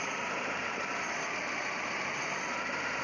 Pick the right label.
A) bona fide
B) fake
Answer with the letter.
A